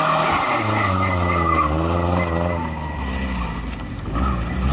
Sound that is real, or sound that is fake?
real